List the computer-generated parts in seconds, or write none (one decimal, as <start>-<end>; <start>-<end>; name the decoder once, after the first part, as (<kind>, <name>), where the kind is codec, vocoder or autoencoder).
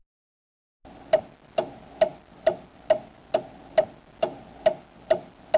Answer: none